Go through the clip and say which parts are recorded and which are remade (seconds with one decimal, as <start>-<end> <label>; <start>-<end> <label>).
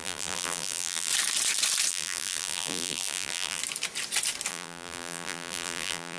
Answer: 0.0-1.1 remade; 1.1-1.9 recorded; 1.9-3.6 remade; 3.6-4.5 recorded; 4.5-6.2 remade